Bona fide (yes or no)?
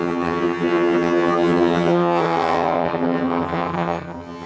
no